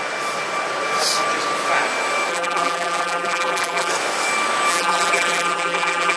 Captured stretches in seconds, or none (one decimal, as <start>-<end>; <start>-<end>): 0.0-2.3; 3.9-4.7